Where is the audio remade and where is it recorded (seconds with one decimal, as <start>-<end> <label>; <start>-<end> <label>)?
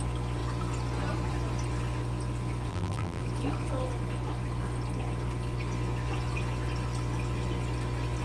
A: 0.0-2.7 recorded; 2.7-3.2 remade; 3.2-8.2 recorded